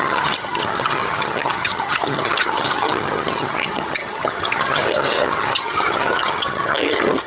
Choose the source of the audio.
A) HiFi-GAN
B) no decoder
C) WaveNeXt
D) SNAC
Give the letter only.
A